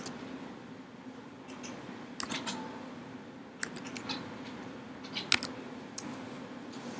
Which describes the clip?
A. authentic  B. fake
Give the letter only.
A